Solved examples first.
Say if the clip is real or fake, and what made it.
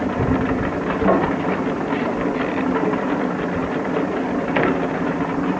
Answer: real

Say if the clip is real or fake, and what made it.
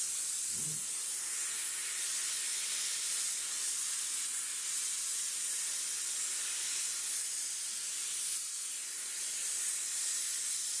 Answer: real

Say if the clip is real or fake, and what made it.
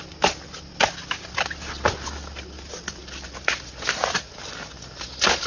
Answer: real